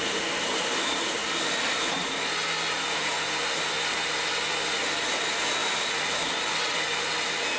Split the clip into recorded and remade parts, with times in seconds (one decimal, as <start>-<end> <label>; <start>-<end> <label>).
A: 0.0-7.6 recorded